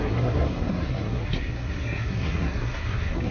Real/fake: fake